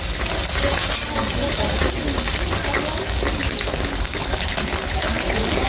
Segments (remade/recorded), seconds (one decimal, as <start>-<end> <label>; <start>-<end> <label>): 0.0-5.7 recorded